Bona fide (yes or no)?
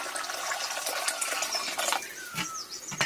yes